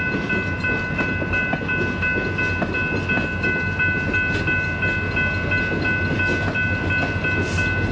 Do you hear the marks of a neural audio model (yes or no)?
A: no